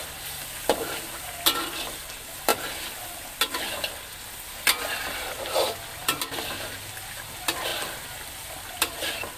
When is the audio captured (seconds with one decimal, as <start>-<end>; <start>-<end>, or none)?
none